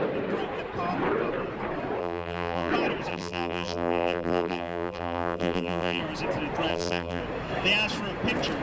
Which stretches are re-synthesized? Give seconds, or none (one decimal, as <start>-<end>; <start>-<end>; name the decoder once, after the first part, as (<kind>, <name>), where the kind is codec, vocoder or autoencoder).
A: 2.0-2.7 (vocoder, BigVGAN v2); 3.1-6.0; 6.7-7.2